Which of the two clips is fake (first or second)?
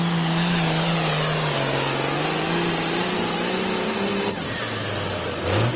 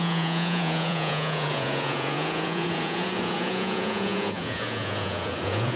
second